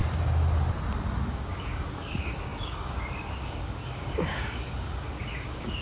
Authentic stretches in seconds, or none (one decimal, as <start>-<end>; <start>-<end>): 0.0-1.3